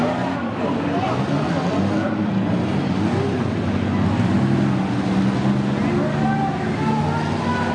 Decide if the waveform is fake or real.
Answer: real